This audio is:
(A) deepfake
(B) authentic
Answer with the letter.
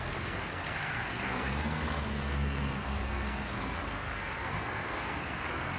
A